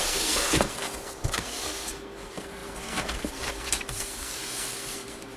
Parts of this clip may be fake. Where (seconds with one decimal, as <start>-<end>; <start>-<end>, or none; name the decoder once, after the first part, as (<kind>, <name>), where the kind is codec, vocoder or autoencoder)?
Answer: 0.0-5.4 (codec, SNAC)